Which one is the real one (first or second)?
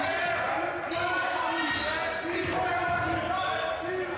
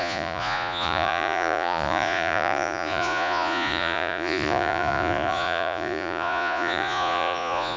first